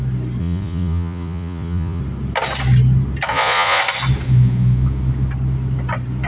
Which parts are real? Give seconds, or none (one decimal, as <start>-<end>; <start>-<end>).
0.0-0.4; 2.0-3.3; 3.8-6.3